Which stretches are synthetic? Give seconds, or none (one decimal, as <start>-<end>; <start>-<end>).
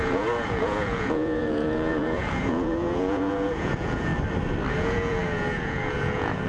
0.0-4.1; 4.7-6.5